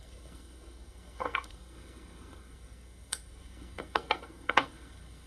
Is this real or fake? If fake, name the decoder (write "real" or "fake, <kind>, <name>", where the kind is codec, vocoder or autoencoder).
fake, codec, SNAC